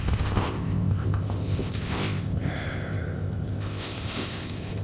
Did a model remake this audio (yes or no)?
yes